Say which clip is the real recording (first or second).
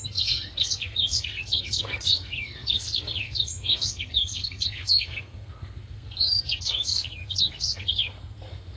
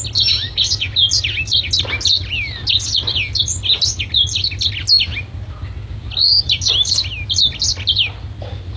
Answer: second